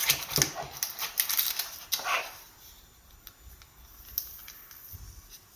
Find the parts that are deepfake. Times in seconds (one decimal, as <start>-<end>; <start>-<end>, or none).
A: none